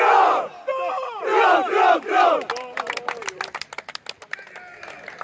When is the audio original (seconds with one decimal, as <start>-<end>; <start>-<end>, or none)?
0.0-5.2